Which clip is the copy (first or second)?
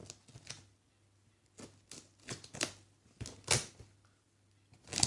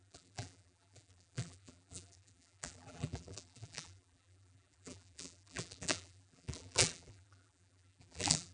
second